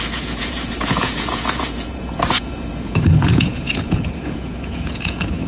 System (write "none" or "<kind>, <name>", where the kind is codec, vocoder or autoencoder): vocoder, Vocos